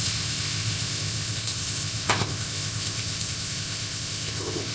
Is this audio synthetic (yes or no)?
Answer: yes